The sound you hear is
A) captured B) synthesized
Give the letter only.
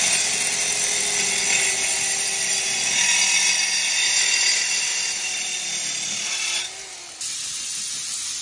A